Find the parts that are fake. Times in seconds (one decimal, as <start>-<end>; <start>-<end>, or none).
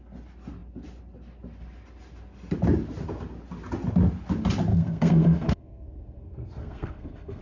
4.7-7.4